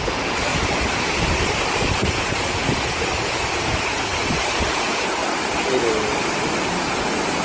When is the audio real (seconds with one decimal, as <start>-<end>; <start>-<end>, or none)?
0.5-1.9; 4.1-4.7; 5.2-6.8